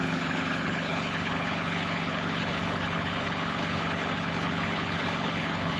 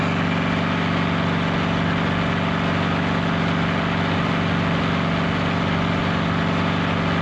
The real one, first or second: second